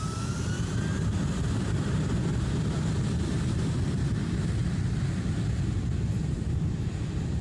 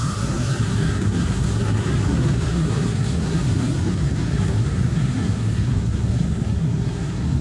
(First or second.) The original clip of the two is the first